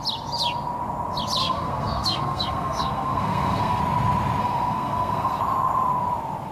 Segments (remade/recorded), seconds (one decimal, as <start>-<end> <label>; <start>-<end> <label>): 0.0-1.4 recorded; 1.4-3.8 remade; 3.8-4.4 recorded; 4.4-5.4 remade; 5.4-6.5 recorded